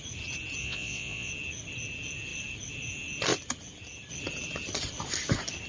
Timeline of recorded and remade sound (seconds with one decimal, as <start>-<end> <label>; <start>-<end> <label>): 0.0-0.6 recorded; 0.6-1.3 remade; 1.3-5.7 recorded